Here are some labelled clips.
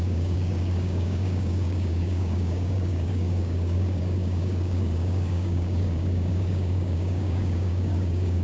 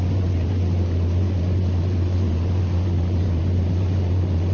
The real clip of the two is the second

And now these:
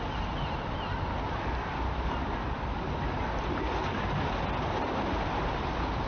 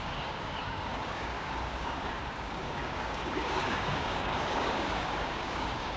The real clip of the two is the first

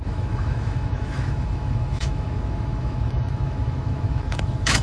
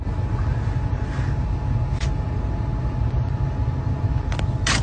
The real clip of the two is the second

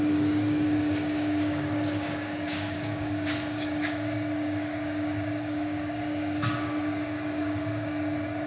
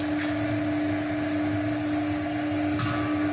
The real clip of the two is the second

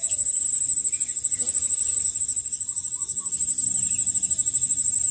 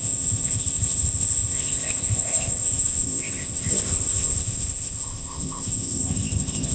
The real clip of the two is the first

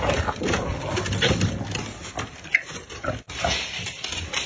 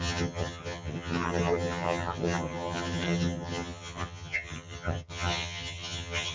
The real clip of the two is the first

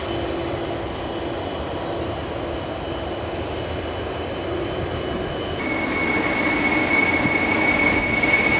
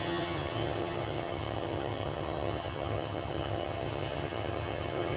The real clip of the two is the first